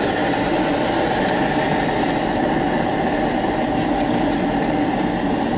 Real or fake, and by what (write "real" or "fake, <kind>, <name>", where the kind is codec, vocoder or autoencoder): real